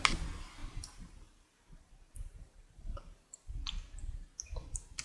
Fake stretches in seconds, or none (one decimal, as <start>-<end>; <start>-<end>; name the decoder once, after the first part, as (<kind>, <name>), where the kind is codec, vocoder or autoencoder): 0.6-3.6 (vocoder, BigVGAN v2)